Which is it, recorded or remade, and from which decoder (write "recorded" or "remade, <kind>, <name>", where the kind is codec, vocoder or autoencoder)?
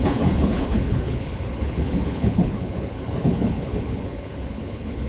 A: remade, codec, HILCodec